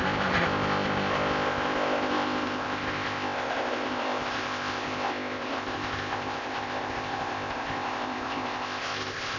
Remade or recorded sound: remade